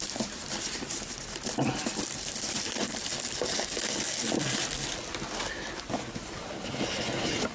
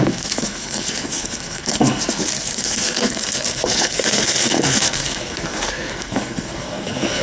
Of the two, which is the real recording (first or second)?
first